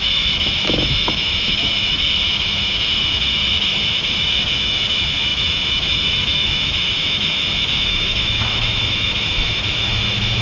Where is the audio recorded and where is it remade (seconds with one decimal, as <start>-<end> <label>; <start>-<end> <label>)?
0.0-10.4 remade